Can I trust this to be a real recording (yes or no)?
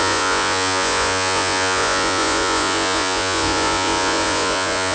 no